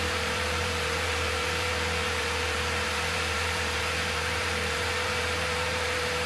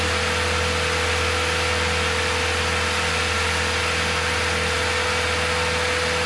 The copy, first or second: first